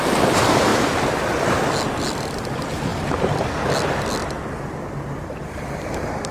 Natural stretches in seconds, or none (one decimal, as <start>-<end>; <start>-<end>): 0.0-2.9; 3.5-4.2